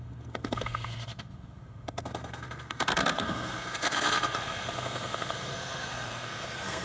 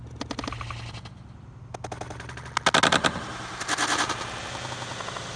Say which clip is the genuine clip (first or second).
second